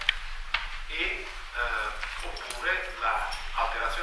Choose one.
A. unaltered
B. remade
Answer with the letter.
A